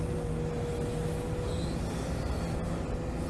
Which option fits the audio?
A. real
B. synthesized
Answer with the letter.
A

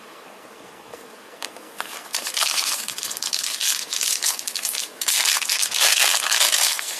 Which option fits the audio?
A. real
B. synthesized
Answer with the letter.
B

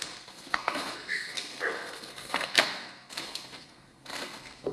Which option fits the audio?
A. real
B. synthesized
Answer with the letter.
B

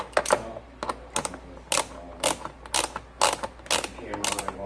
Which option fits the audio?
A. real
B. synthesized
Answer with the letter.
A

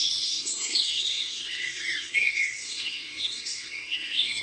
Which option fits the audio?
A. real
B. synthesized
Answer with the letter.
B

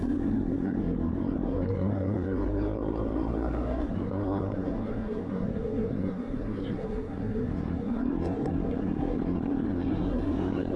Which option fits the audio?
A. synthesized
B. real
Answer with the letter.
A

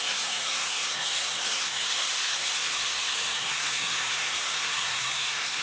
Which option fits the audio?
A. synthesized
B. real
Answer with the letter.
A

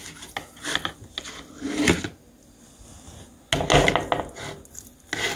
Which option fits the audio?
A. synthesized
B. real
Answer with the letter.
B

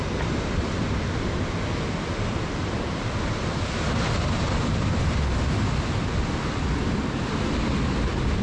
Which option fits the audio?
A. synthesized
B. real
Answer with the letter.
B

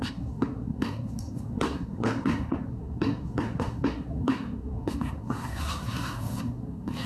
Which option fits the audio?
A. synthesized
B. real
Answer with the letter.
A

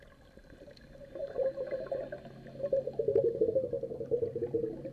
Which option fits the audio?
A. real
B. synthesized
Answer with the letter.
A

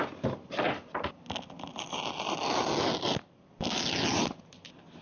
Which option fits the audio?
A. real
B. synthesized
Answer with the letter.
A